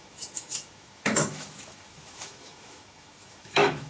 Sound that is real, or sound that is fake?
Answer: fake